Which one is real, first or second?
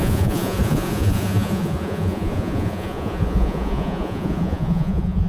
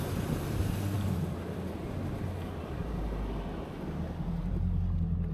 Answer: second